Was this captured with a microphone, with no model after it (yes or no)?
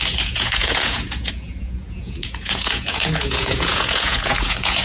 no